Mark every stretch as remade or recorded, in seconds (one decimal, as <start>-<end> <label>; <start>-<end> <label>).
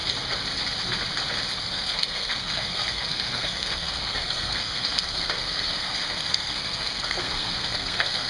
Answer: 0.0-1.6 recorded; 1.6-8.3 remade